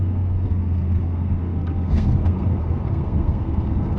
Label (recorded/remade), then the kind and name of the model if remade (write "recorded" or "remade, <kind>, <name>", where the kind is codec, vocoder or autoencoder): remade, codec, SNAC